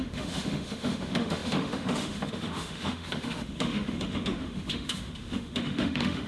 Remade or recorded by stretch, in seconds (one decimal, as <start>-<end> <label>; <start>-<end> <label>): 0.0-6.3 remade